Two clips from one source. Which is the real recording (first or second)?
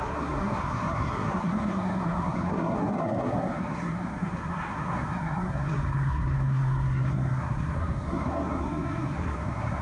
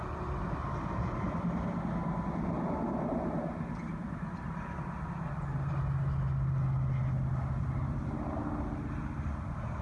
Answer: second